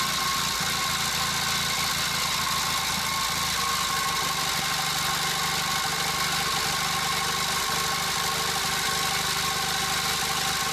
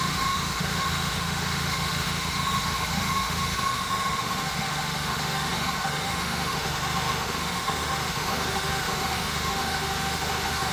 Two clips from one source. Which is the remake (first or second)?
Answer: second